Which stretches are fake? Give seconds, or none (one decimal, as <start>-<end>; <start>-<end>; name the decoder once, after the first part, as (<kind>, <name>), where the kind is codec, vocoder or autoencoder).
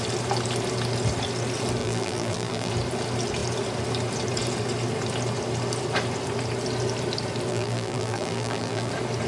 1.8-2.7 (vocoder, BigVGAN v2); 7.5-8.9